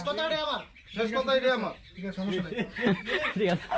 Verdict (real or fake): real